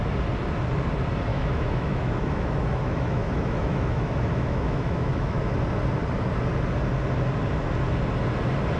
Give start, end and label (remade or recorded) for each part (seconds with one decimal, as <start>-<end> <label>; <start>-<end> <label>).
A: 0.0-1.3 recorded; 1.3-5.5 remade; 5.5-8.8 recorded